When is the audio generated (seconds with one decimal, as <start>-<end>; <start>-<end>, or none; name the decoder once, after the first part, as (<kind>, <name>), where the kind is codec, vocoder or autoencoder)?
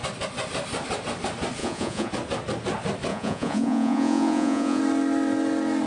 1.6-2.1 (vocoder, Vocos); 3.1-4.8